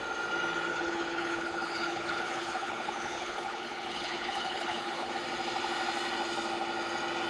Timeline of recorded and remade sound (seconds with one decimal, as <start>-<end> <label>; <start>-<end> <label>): 0.0-0.7 recorded; 0.7-5.1 remade; 5.1-7.3 recorded